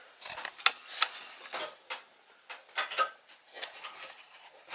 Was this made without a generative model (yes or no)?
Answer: yes